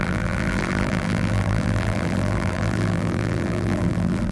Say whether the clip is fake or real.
fake